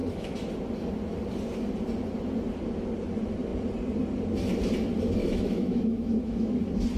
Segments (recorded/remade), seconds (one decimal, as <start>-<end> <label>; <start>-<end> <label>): 0.0-0.5 remade; 0.5-5.2 recorded; 5.2-6.6 remade; 6.6-7.0 recorded